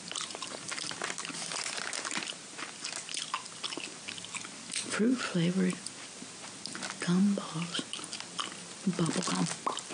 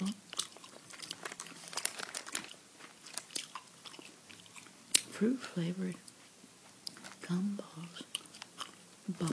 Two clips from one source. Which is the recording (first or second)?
first